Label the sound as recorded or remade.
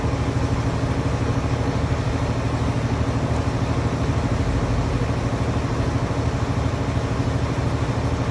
recorded